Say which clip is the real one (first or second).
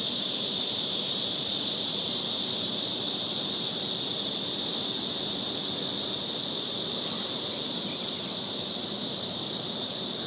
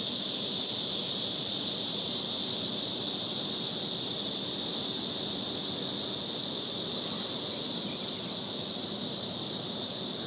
second